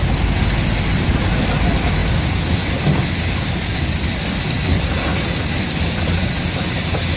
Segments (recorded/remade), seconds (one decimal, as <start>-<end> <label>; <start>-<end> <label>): 0.0-7.2 recorded